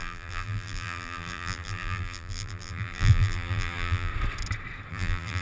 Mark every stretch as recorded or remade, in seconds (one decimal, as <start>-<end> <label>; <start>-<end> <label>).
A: 0.0-4.1 remade; 4.1-4.9 recorded; 4.9-5.4 remade